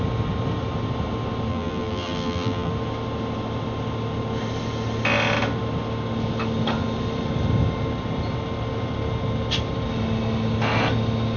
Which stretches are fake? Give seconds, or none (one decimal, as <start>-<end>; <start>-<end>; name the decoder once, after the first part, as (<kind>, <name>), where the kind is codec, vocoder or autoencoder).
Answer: 1.5-2.7 (vocoder, BigVGAN v2)